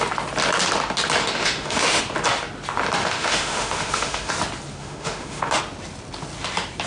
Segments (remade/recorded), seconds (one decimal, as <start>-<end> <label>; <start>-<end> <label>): 0.0-1.2 recorded; 1.2-2.0 remade; 2.0-3.0 recorded; 3.0-4.3 remade; 4.3-4.8 recorded; 4.8-5.6 remade; 5.6-6.9 recorded